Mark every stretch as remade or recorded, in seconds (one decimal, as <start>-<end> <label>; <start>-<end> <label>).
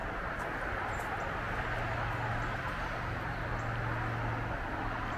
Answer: 0.0-5.2 recorded